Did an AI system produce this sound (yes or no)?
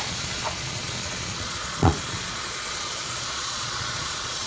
yes